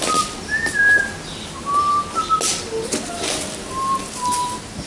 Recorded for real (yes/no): yes